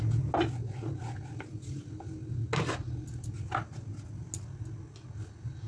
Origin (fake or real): real